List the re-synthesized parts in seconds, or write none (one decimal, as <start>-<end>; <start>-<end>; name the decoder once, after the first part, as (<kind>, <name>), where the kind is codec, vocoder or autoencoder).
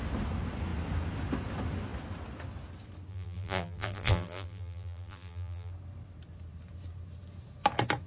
3.1-5.7 (vocoder, BigVGAN v2)